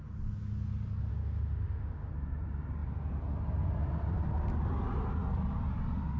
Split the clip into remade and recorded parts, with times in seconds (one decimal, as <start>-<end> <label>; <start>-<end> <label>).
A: 0.0-1.1 recorded; 1.1-2.1 remade; 2.1-6.2 recorded